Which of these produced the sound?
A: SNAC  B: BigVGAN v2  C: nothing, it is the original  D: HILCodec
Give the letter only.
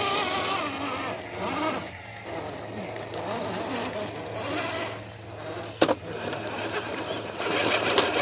C